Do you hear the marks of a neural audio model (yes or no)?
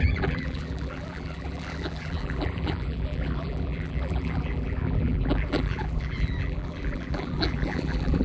yes